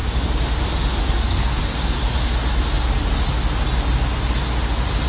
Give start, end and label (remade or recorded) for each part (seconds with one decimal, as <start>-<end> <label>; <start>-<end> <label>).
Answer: 0.0-1.0 recorded; 1.0-1.6 remade; 1.6-5.1 recorded